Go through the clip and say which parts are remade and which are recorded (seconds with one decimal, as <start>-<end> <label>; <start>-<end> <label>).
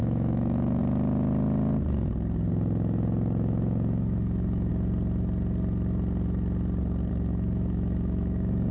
0.0-0.8 remade; 0.8-2.5 recorded; 2.5-4.7 remade; 4.7-7.1 recorded; 7.1-8.7 remade